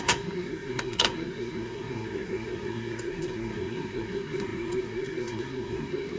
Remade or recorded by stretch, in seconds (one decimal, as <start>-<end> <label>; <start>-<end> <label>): 0.0-6.2 remade